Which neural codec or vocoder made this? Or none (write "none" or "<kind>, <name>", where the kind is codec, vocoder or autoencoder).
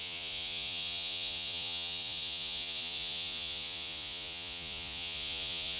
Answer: vocoder, Vocos